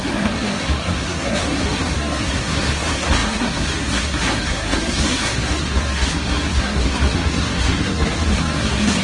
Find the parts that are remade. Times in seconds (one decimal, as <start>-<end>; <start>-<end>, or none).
0.0-9.0